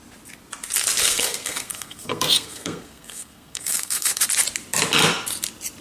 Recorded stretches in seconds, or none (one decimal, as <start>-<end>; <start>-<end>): 0.0-1.0; 4.2-5.8